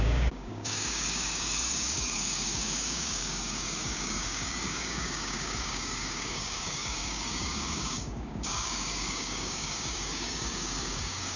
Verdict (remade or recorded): remade